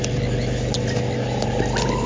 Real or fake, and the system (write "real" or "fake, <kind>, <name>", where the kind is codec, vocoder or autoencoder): real